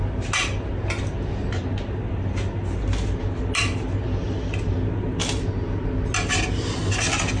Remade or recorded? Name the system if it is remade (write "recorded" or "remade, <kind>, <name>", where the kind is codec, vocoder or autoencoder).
recorded